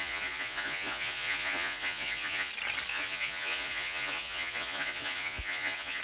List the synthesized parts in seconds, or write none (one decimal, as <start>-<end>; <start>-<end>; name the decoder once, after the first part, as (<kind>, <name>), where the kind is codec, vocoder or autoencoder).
0.0-2.5 (vocoder, Vocos); 2.9-6.0

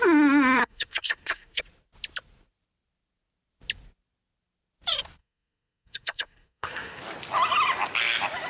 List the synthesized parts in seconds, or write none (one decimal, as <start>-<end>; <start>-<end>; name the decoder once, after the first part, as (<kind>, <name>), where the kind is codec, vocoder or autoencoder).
0.6-1.6 (codec, SNAC); 5.2-7.0